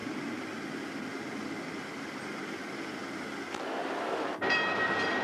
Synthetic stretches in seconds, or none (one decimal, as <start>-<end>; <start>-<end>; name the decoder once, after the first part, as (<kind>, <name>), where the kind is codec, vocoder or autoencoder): 0.0-1.6 (vocoder, BigVGAN v2); 2.6-3.3